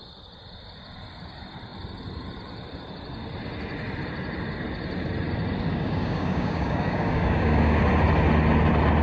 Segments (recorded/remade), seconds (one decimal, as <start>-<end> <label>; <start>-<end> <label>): 0.0-5.7 recorded; 5.7-7.8 remade; 7.8-9.0 recorded